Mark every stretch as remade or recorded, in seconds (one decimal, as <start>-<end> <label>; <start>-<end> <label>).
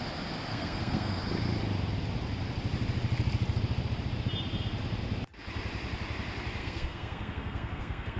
0.0-0.5 recorded; 0.5-1.2 remade; 1.2-6.6 recorded; 6.6-8.2 remade